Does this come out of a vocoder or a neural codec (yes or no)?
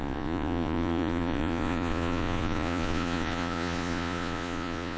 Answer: yes